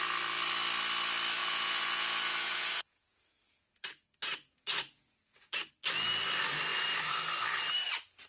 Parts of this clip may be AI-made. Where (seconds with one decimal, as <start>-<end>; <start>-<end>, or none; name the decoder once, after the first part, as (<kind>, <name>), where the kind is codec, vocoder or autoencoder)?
1.4-5.7 (vocoder, Vocos)